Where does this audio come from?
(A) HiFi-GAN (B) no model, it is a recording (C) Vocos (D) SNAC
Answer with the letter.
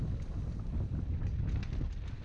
B